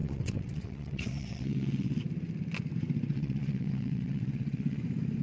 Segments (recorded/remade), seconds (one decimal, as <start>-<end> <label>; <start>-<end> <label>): 0.0-2.0 remade; 2.0-3.1 recorded; 3.1-4.8 remade; 4.8-5.2 recorded